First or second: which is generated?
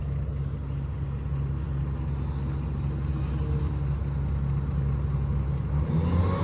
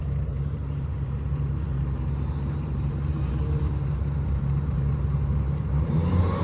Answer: second